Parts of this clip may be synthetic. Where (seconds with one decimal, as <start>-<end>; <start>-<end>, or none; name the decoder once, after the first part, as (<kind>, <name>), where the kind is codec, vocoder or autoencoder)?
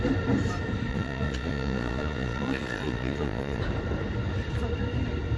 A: 0.9-3.6 (vocoder, Vocos)